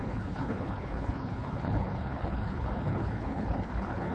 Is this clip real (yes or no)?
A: no